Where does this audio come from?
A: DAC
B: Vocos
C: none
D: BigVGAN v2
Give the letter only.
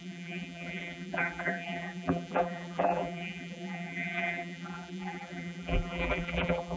D